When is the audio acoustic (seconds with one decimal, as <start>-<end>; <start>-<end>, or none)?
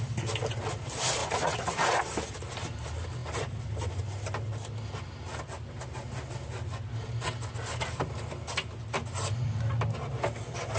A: 0.0-1.2; 2.0-10.8